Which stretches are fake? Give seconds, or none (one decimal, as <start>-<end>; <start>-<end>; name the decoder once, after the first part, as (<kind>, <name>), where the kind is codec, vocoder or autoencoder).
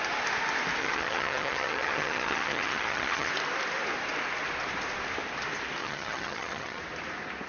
0.8-3.3 (vocoder, HiFi-GAN); 5.8-6.8